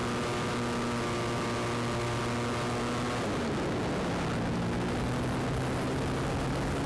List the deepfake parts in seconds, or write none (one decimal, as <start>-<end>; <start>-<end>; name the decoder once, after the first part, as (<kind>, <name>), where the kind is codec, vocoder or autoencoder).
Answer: none